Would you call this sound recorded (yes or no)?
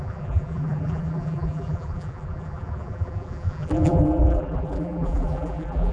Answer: no